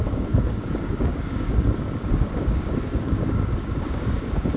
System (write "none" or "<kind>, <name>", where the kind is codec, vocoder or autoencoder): codec, DAC